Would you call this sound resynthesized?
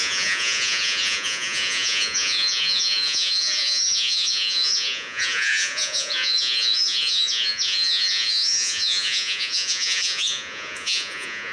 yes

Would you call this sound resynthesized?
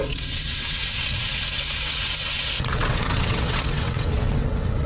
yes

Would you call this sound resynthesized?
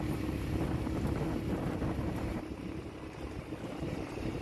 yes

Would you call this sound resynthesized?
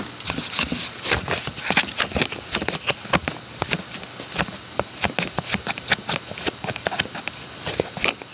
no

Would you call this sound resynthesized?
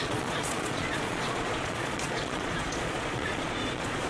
yes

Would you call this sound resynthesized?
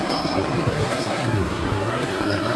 yes